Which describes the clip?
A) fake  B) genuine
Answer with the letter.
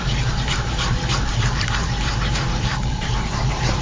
A